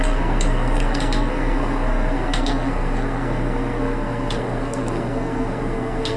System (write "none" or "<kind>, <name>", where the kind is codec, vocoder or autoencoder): codec, SNAC